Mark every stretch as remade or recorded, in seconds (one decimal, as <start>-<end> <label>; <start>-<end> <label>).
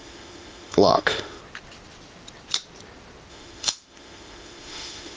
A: 0.0-1.4 remade; 1.4-3.3 recorded; 3.3-5.2 remade